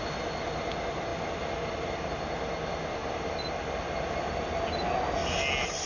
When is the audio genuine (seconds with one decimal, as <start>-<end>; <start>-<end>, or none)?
0.0-1.1; 2.1-3.0; 4.2-5.9